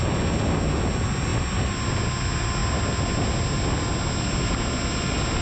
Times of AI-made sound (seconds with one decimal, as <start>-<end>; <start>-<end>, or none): none